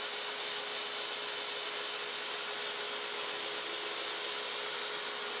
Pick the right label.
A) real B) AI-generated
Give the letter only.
A